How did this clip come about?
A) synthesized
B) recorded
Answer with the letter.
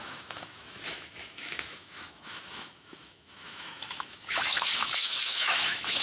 A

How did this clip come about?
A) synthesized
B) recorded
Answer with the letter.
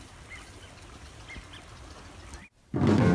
B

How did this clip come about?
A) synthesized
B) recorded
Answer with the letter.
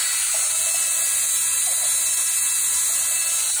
B